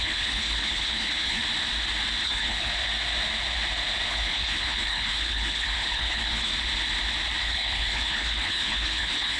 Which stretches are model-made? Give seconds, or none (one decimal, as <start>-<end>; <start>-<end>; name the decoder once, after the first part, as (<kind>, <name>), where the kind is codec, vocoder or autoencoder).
0.0-1.4 (codec, HILCodec); 2.2-2.7; 4.1-6.5; 7.4-9.4